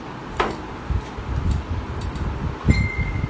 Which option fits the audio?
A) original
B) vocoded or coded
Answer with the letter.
A